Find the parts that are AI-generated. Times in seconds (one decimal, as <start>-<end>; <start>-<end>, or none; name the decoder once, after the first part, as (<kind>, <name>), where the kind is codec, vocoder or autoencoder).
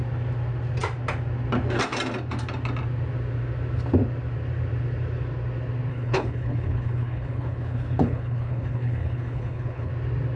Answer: 5.9-9.9 (codec, HILCodec)